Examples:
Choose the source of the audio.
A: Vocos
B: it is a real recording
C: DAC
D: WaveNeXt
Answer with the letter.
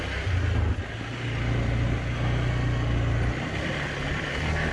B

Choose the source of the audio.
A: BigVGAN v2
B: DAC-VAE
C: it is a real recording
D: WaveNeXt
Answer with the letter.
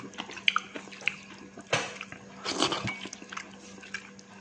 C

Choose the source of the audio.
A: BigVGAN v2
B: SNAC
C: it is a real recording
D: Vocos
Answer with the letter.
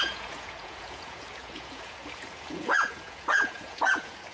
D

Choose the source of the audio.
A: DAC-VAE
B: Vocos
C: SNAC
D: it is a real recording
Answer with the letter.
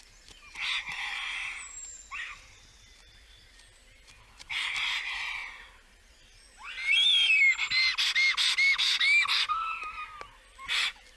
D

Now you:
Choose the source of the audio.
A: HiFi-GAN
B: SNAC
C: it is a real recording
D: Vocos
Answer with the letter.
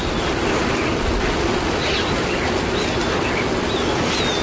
C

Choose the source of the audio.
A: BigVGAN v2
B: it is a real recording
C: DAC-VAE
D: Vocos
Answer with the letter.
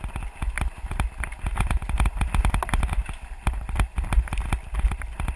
B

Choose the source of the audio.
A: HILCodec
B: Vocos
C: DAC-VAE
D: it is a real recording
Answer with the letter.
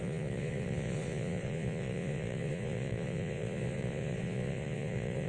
B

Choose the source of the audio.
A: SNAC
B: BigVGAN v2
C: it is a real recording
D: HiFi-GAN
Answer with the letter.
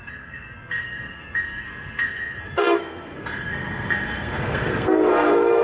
A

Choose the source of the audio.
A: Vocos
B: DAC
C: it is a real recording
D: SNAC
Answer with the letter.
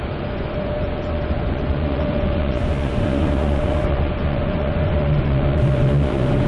A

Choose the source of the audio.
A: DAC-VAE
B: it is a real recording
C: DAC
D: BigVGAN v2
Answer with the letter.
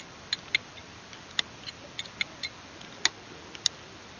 B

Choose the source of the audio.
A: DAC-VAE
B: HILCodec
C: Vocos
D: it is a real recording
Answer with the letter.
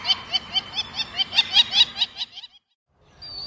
D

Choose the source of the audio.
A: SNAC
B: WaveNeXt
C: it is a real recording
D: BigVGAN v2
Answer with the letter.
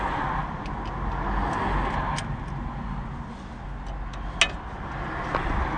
C